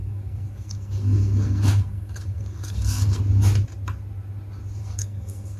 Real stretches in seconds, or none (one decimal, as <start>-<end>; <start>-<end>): 3.2-4.8